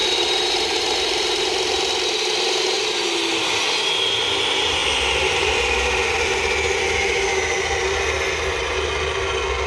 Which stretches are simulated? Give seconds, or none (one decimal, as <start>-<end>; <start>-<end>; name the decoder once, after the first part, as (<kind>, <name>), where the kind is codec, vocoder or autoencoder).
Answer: 0.0-1.9 (vocoder, BigVGAN v2)